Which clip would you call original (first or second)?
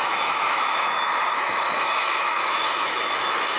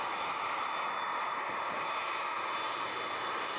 second